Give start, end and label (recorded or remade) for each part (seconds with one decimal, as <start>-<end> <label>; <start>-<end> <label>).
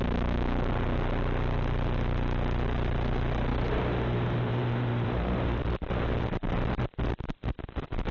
0.0-3.5 recorded; 3.5-5.6 remade; 5.6-8.1 recorded